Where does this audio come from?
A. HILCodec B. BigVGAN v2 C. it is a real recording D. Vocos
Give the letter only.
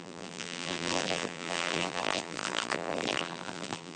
B